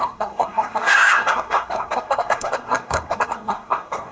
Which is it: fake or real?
fake